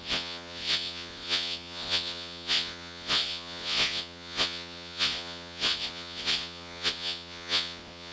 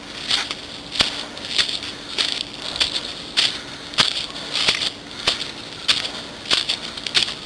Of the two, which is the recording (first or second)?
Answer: second